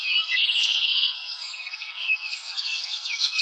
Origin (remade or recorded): remade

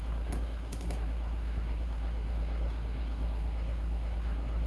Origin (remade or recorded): remade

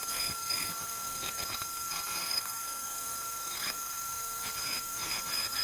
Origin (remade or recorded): remade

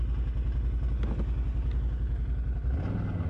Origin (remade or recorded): recorded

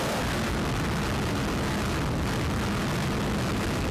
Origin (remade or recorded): recorded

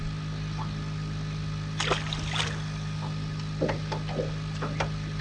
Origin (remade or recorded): recorded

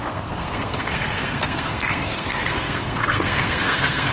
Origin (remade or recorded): remade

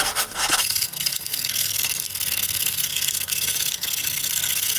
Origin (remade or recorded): remade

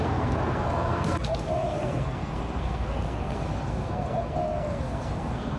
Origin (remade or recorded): remade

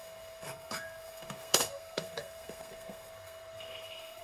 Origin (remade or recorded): remade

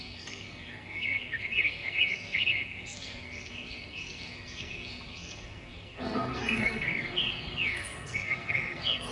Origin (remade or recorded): remade